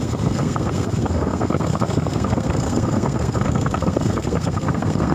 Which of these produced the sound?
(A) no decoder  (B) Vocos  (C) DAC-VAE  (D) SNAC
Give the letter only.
D